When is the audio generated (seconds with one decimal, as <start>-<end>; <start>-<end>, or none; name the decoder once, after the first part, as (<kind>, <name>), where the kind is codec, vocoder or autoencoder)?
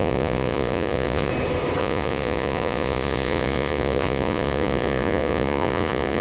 0.0-1.3 (vocoder, Vocos); 1.8-6.2